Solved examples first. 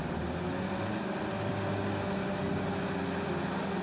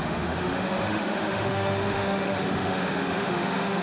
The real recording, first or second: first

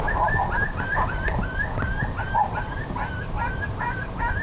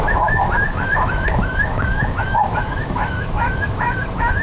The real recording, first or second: first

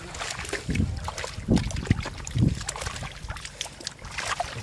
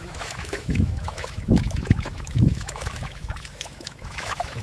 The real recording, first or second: first